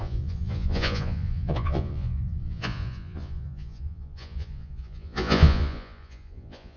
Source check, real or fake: fake